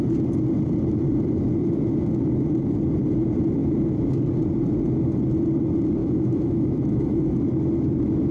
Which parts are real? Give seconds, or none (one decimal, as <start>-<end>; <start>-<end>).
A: 0.0-6.0; 7.2-8.3